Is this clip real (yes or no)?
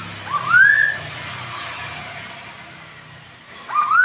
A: yes